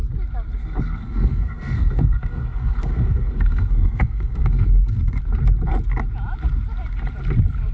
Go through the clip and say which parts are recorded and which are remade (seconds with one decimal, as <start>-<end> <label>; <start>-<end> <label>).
0.0-0.6 recorded; 0.6-5.2 remade; 5.2-7.7 recorded